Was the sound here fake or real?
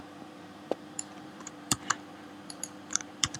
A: fake